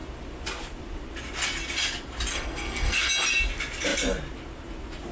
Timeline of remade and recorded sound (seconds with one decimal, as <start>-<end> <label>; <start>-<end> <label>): 0.0-2.3 recorded; 2.3-3.1 remade; 3.1-5.1 recorded